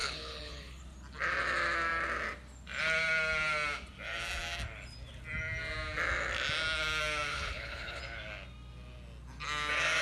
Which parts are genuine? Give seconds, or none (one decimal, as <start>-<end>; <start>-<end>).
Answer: 0.8-7.3; 8.0-10.0